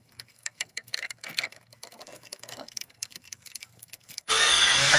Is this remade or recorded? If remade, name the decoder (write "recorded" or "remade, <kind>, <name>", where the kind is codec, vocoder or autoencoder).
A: remade, codec, SNAC